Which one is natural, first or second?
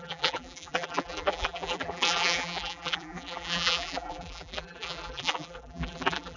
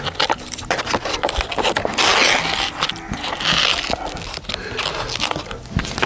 second